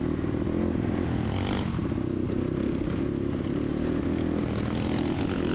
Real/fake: real